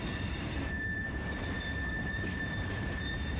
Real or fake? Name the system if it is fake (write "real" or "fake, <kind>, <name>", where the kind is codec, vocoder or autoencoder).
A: fake, vocoder, BigVGAN v2